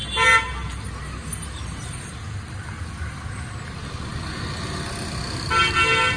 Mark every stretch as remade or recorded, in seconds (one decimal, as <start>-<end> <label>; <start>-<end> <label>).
0.0-6.2 recorded